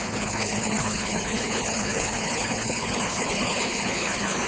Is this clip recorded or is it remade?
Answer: remade